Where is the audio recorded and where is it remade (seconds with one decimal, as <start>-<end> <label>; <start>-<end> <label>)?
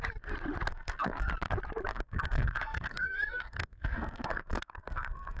0.0-0.7 recorded; 0.7-1.3 remade; 1.3-1.9 recorded; 1.9-5.4 remade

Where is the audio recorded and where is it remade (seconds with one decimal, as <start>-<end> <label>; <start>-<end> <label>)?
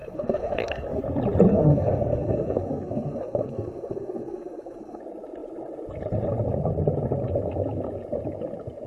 0.0-1.0 remade; 1.0-1.5 recorded; 1.5-5.0 remade; 5.0-8.9 recorded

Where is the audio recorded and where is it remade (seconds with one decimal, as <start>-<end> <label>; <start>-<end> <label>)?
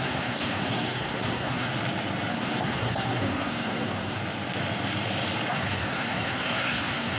0.0-1.7 remade; 1.7-2.3 recorded; 2.3-4.2 remade; 4.2-5.5 recorded; 5.5-7.2 remade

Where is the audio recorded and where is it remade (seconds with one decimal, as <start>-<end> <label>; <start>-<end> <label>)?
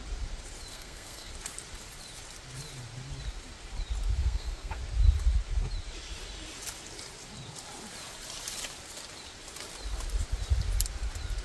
0.0-0.7 recorded; 0.7-1.3 remade; 1.3-4.2 recorded; 4.2-4.8 remade; 4.8-11.4 recorded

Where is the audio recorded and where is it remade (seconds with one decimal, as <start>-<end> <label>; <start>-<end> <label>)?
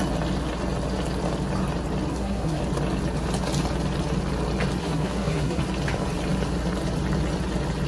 0.0-2.1 recorded; 2.1-2.6 remade; 2.6-4.8 recorded; 4.8-5.6 remade; 5.6-7.9 recorded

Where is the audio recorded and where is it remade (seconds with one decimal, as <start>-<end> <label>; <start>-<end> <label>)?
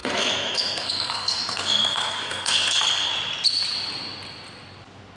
0.0-3.1 remade; 3.1-5.2 recorded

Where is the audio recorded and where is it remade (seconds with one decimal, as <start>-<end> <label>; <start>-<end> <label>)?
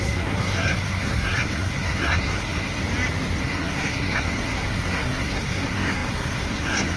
0.0-2.8 remade; 2.8-3.4 recorded; 3.4-7.0 remade